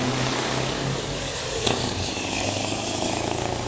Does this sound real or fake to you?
fake